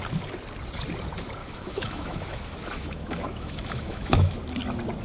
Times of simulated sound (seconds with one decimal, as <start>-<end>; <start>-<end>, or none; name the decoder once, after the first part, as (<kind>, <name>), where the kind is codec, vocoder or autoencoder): 1.4-4.4 (autoencoder, DAC-VAE)